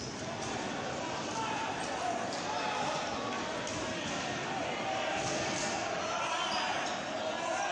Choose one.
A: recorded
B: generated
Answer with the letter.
A